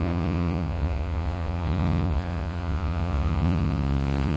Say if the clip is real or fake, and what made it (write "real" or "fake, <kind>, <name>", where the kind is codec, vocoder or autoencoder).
fake, vocoder, Vocos